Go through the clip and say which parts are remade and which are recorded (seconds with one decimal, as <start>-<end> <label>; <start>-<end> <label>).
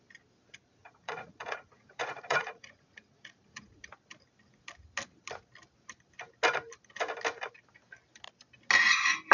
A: 0.0-0.8 recorded; 0.8-3.8 remade; 3.8-9.3 recorded